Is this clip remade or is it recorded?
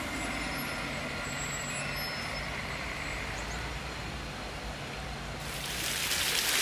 recorded